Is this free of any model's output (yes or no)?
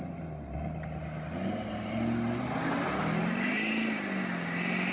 yes